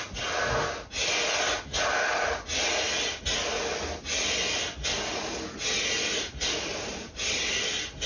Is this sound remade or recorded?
recorded